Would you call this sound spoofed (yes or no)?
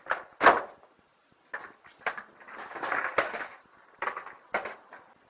no